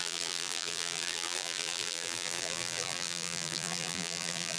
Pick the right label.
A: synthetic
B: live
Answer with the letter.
A